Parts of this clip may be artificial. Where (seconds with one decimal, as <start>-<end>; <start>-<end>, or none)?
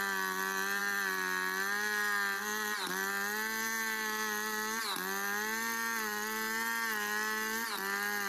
none